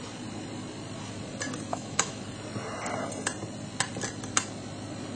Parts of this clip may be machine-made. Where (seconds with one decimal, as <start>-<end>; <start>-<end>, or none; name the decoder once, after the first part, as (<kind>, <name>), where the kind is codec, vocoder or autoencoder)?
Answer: 1.7-2.3 (autoencoder, DAC-VAE)